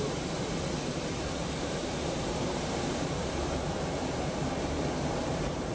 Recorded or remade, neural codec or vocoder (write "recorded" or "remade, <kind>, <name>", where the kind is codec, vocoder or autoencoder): remade, vocoder, BigVGAN v2